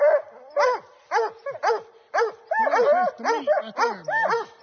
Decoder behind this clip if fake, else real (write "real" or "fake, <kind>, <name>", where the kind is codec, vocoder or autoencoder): real